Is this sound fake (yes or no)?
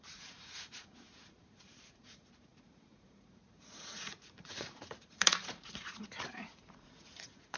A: yes